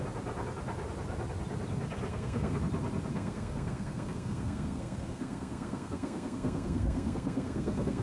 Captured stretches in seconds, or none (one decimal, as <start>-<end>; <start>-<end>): 0.0-2.1; 2.6-3.1